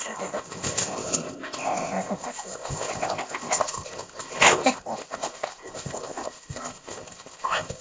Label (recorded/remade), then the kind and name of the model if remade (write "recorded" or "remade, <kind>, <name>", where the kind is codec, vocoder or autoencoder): remade, codec, ZipCodec